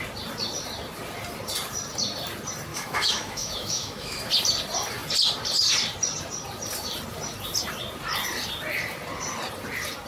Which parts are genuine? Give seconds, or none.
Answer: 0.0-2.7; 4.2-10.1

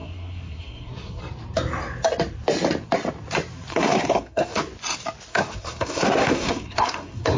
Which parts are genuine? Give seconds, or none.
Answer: 1.2-3.7; 4.6-5.3

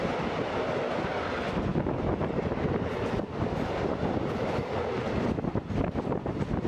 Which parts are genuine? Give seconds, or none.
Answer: 0.0-6.7

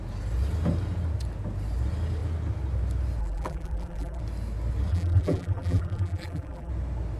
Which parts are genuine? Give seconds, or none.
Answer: 0.0-3.2; 4.2-4.9; 6.7-7.2

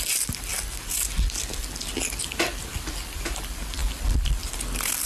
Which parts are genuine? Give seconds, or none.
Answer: 0.0-5.1